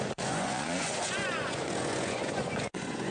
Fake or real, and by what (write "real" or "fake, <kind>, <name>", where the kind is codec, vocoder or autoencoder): fake, vocoder, Vocos